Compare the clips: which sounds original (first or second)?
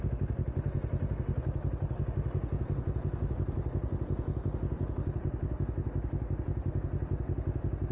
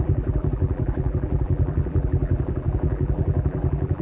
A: first